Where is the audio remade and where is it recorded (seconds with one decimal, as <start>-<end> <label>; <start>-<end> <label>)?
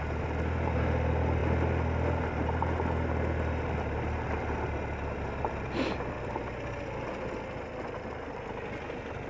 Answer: 0.0-9.3 recorded